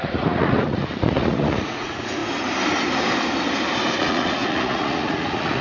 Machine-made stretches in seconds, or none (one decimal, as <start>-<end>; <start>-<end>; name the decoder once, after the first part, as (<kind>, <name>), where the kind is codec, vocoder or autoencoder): 0.0-2.2 (vocoder, Vocos); 4.0-5.6